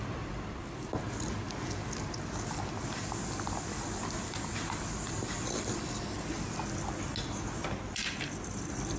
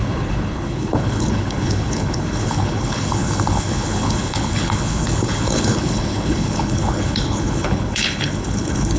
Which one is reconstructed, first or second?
second